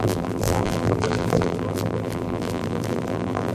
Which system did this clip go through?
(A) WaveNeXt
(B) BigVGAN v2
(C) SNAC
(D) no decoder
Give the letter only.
B